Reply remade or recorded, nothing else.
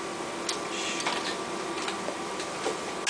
recorded